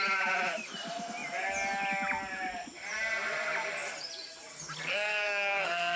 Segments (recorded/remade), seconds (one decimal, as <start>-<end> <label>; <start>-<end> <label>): 0.0-4.9 recorded; 4.9-6.0 remade